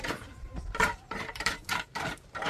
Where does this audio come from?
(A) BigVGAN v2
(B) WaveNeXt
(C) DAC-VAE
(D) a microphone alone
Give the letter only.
A